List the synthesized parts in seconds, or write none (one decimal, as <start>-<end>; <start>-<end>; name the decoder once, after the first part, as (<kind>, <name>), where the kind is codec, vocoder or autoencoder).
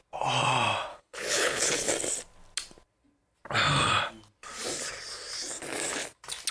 0.9-1.9 (codec, HILCodec)